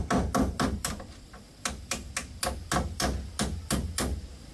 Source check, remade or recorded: recorded